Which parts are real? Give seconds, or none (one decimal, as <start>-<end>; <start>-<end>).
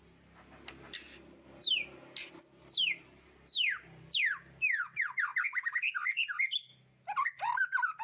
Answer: 0.0-8.0